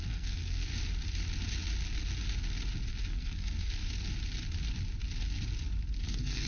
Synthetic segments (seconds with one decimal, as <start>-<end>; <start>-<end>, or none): 0.0-0.7; 2.9-3.8; 6.0-6.5